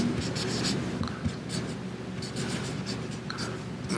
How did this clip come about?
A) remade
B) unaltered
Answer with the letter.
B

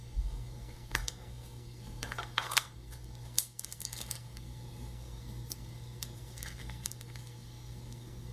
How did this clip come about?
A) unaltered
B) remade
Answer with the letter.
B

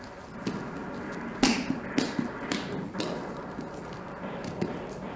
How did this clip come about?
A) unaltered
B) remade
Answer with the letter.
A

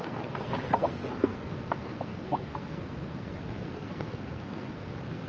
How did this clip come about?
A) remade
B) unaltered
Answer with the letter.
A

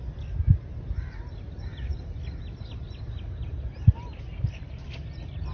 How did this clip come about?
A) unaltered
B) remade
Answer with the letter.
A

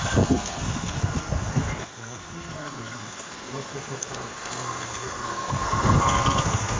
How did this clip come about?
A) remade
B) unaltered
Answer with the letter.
A